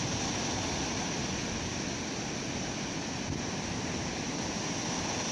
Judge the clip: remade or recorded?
recorded